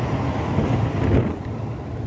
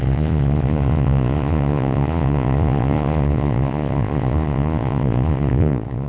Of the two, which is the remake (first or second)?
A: second